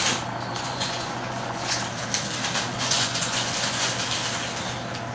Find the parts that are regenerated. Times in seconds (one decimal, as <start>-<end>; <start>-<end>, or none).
0.5-1.8; 2.7-3.9